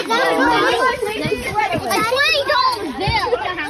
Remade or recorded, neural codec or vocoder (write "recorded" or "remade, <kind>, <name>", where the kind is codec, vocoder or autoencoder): recorded